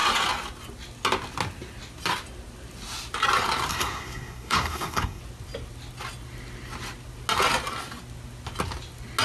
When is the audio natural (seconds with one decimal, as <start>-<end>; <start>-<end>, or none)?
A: 0.0-3.7; 5.2-9.2